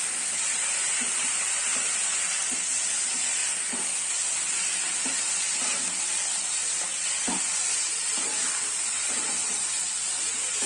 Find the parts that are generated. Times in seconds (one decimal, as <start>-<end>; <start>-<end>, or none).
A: none